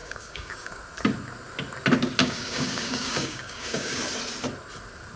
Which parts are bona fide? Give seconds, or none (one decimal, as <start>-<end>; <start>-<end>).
0.8-2.2; 4.0-5.2